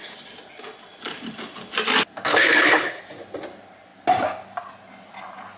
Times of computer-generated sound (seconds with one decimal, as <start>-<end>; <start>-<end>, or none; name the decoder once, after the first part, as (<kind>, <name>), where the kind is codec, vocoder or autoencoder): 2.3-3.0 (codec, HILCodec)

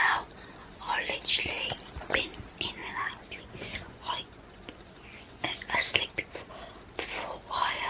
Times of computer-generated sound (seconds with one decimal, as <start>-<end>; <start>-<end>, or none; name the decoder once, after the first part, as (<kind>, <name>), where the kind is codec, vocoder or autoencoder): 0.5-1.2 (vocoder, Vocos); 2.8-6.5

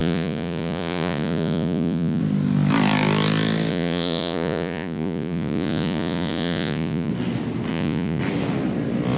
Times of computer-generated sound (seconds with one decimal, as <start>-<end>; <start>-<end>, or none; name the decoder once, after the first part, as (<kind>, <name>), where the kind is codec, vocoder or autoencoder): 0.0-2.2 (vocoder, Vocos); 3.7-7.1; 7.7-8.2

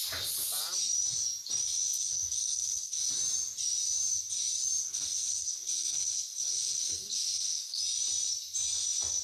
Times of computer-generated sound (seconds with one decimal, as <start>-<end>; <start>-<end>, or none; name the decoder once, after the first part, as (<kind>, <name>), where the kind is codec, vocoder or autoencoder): 1.6-3.1 (codec, SNAC); 4.8-7.8